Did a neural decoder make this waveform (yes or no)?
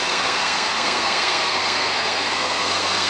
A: yes